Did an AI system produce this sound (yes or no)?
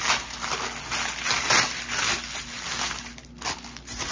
no